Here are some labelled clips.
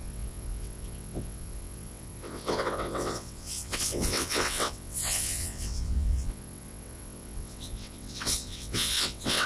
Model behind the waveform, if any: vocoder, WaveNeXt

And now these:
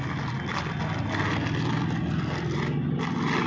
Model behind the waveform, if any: none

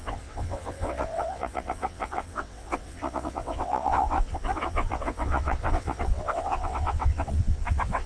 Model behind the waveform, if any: vocoder, WaveNeXt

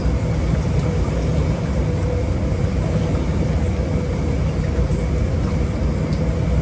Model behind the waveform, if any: none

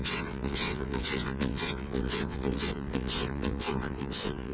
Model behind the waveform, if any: vocoder, WaveNeXt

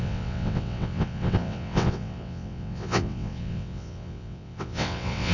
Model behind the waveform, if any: vocoder, WaveNeXt